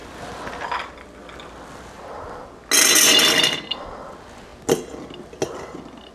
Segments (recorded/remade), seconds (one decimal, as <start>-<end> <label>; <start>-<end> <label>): 0.0-6.1 recorded